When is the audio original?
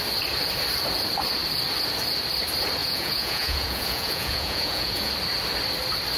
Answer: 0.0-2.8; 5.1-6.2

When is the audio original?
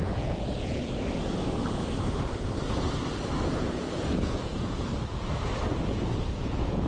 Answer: 0.8-3.6; 4.9-6.4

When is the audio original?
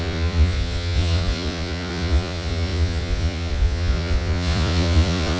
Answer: none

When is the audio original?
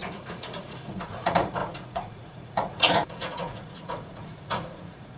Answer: none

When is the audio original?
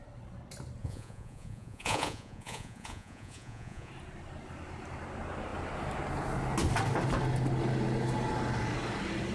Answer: 0.0-0.8; 3.9-9.3